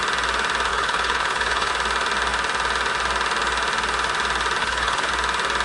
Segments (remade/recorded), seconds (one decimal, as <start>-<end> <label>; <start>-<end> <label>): 0.0-0.7 recorded; 0.7-1.7 remade; 1.7-4.6 recorded; 4.6-5.1 remade; 5.1-5.6 recorded